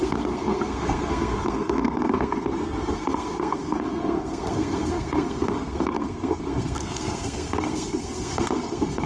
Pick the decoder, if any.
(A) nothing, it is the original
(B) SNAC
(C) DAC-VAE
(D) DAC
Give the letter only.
B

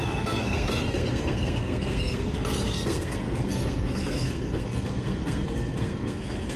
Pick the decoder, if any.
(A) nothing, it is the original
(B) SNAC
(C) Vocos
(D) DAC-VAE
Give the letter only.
B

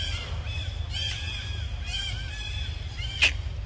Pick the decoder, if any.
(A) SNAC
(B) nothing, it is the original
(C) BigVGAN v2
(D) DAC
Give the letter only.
B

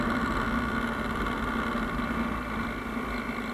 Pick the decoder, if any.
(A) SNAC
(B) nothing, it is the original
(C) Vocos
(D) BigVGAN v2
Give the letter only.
B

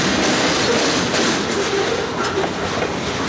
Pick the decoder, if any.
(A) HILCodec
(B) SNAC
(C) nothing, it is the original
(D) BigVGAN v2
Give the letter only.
C